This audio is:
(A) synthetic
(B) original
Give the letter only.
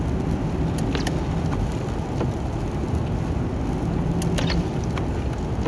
B